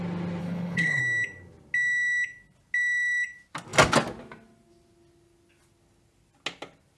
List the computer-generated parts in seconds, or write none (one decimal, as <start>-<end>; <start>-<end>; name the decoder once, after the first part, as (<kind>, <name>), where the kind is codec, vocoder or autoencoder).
0.4-1.0 (codec, HILCodec)

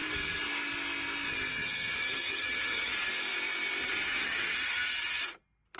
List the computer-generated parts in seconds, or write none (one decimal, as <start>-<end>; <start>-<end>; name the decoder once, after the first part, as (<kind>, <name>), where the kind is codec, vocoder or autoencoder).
1.5-3.1 (vocoder, HiFi-GAN); 3.8-5.2

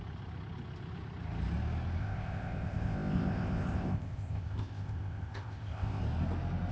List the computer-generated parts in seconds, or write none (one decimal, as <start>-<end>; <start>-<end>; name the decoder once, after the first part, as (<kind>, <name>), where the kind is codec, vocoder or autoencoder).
2.0-6.0 (codec, ZipCodec)

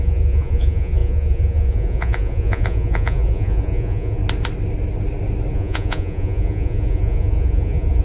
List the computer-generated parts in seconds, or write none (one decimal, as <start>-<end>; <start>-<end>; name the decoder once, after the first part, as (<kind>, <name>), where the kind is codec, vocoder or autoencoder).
0.0-4.2 (vocoder, Vocos); 5.5-8.0

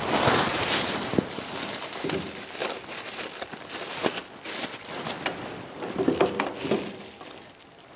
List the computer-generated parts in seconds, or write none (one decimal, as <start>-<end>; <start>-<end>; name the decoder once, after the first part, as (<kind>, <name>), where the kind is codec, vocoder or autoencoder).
0.5-1.0 (vocoder, BigVGAN v2)

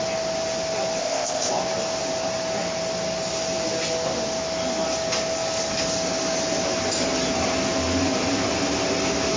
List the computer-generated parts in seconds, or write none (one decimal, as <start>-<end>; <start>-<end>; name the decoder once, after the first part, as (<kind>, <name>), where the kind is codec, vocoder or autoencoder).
1.0-1.5 (codec, ZipCodec)